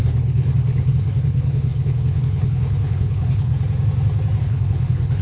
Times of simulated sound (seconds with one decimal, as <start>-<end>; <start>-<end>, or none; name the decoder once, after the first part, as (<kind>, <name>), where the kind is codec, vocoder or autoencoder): 0.0-3.5 (codec, HILCodec); 4.4-5.2